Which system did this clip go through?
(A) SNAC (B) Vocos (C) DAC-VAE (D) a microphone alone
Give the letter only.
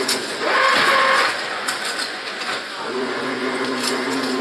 B